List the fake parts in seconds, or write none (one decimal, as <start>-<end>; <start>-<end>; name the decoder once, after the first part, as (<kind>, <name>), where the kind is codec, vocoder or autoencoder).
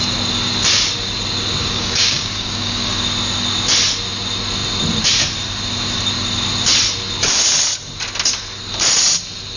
1.6-2.9 (codec, DAC)